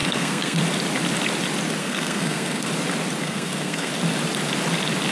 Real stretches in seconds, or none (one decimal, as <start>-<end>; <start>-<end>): 0.6-1.8; 2.7-3.2; 3.9-5.1